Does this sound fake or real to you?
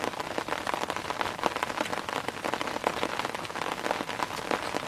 real